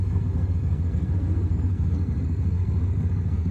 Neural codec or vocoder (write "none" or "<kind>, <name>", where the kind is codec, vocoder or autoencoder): codec, SNAC